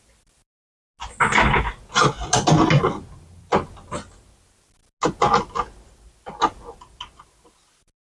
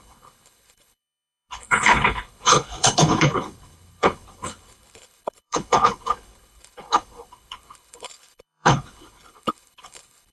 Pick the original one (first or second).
first